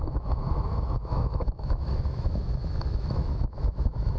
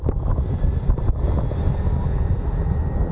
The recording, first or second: second